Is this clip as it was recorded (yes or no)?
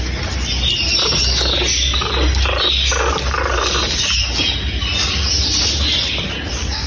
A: yes